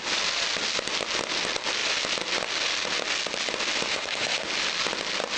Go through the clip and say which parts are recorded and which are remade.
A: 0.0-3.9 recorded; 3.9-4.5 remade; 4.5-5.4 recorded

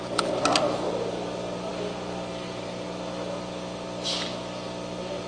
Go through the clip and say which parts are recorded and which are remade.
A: 0.0-5.3 recorded

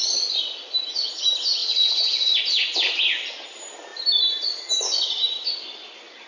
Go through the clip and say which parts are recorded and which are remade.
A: 0.0-6.3 recorded